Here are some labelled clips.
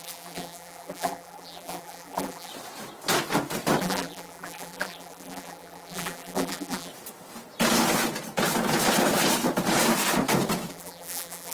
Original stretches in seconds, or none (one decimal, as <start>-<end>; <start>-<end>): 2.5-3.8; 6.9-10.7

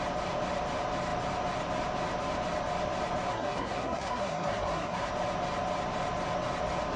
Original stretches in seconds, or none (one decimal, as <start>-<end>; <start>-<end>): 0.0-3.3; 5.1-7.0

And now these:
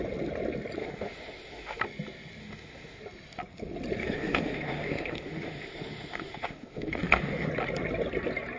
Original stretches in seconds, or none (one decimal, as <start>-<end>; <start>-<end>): 0.0-0.8; 1.8-2.4; 3.0-4.0; 7.5-8.6

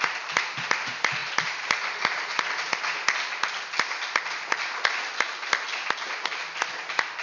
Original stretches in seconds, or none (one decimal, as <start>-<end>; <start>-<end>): 0.0-7.2

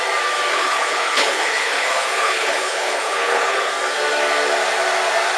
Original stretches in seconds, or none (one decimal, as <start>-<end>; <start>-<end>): 0.0-0.5; 3.7-5.4

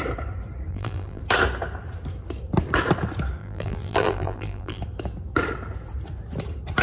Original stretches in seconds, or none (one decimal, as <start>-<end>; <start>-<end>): 0.0-0.7; 1.2-3.4; 4.8-6.8